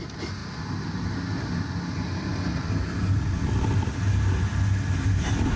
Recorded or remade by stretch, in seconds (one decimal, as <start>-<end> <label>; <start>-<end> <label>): 0.0-5.6 recorded